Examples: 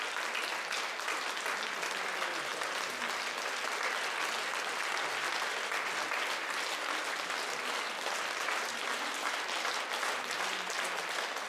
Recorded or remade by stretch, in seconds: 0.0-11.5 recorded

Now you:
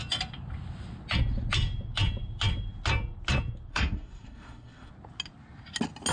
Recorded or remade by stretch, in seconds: 0.0-3.7 recorded; 3.7-4.9 remade; 4.9-6.1 recorded

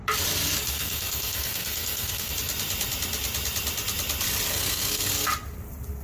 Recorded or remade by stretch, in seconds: 0.0-0.7 recorded; 0.7-2.3 remade; 2.3-4.5 recorded; 4.5-5.1 remade; 5.1-6.0 recorded